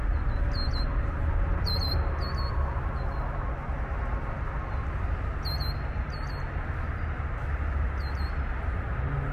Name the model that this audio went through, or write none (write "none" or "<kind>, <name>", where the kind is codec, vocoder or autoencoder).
none